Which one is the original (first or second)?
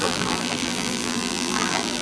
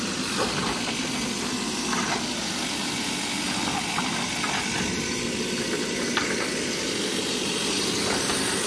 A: second